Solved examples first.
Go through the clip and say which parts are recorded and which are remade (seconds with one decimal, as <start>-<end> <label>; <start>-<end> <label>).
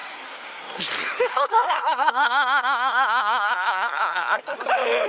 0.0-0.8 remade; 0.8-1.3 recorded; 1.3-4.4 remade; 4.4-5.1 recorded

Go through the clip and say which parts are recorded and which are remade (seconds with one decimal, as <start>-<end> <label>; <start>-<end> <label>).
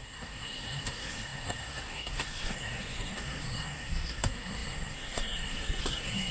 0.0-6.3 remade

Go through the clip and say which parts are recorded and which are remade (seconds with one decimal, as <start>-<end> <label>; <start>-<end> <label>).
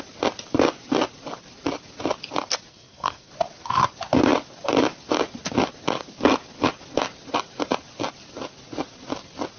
0.0-2.7 recorded; 2.7-3.3 remade; 3.3-9.6 recorded